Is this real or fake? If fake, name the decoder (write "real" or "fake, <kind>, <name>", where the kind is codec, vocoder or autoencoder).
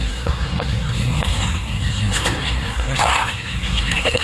fake, codec, SNAC